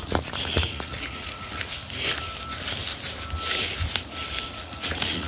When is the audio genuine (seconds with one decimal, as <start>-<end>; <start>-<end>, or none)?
1.8-4.5